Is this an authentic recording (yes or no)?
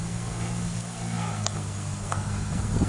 no